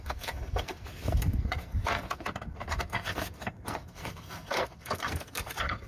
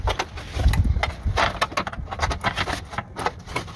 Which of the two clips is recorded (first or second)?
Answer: second